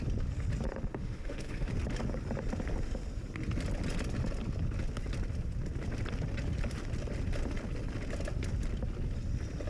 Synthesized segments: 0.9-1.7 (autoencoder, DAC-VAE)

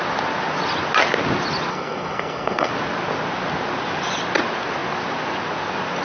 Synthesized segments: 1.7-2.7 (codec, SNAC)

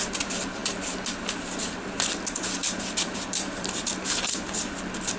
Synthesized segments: 0.6-2.1 (vocoder, BigVGAN v2); 2.6-5.2

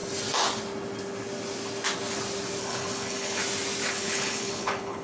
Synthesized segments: 2.6-3.4 (codec, HILCodec); 3.9-5.0